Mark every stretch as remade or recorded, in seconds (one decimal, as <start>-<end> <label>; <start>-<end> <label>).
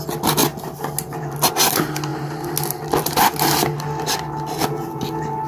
0.0-5.5 recorded